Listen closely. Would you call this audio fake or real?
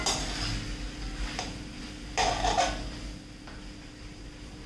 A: real